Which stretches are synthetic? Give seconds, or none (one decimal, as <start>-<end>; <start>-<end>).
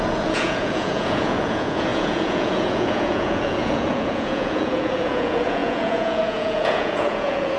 0.0-7.6